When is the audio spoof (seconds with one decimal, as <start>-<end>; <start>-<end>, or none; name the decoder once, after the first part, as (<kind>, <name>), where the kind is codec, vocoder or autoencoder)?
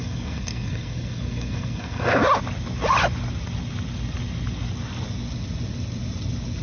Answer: 0.0-2.2 (codec, SNAC)